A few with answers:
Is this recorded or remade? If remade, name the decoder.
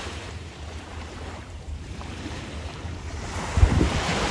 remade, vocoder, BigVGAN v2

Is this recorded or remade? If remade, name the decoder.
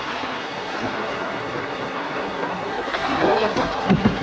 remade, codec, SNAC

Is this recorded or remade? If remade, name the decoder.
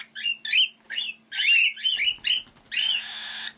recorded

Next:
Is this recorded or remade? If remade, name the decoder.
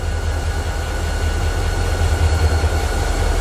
recorded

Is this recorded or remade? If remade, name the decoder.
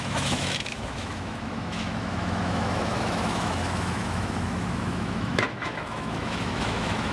remade, autoencoder, DAC-VAE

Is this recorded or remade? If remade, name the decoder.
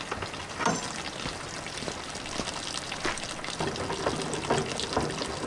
recorded